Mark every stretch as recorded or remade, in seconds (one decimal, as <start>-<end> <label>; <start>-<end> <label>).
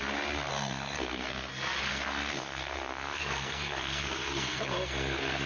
0.0-0.5 recorded; 0.5-1.5 remade; 1.5-1.9 recorded; 1.9-5.5 remade